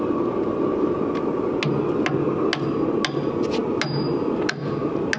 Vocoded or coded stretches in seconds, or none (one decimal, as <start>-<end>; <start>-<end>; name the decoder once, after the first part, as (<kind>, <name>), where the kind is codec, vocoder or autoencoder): none